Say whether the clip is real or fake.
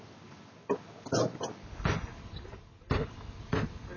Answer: real